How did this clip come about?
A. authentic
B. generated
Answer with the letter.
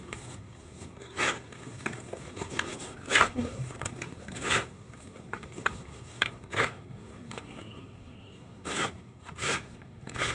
B